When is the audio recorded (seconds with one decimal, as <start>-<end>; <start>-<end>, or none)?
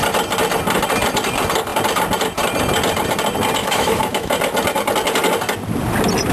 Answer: 0.0-3.6; 4.3-6.3